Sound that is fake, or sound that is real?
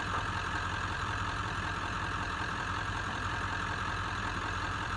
fake